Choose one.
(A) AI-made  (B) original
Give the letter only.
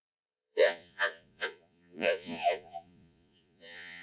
A